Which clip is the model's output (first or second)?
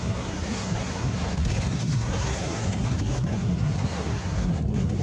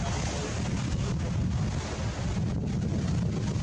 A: first